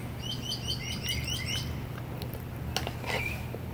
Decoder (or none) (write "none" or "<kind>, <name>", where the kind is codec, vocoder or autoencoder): none